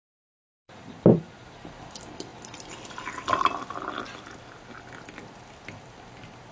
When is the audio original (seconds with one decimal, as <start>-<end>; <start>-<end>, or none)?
0.0-0.5; 1.3-6.5